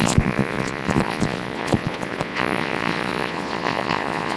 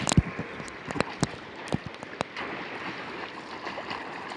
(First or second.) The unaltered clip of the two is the second